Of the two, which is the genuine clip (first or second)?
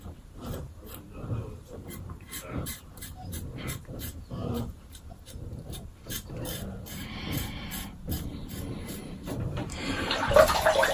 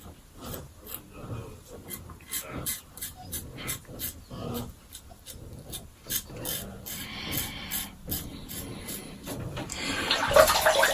second